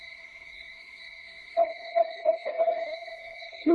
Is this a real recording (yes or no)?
no